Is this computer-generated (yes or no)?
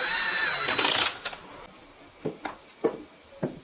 no